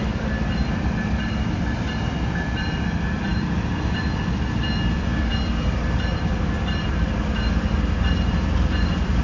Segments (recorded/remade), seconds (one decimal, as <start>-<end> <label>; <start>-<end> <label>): 0.0-9.2 remade